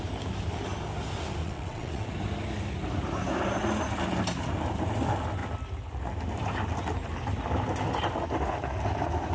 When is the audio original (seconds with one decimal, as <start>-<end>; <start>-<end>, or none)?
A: 0.0-1.4; 2.1-9.3